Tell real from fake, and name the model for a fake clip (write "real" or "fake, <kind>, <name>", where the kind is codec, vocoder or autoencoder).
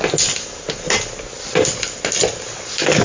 real